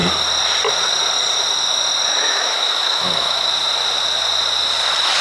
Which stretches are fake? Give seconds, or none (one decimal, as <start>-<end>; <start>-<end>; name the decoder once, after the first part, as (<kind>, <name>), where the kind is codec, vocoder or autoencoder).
2.1-3.5 (autoencoder, DAC-VAE)